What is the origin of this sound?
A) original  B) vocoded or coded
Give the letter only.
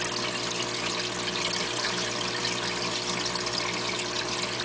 A